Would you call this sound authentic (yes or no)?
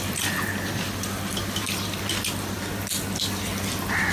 yes